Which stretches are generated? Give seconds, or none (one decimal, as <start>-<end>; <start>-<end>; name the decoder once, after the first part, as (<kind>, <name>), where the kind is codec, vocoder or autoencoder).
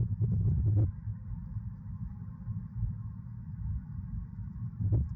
none